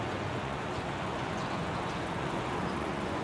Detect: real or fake fake